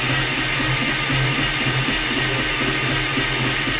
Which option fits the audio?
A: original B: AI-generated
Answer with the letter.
A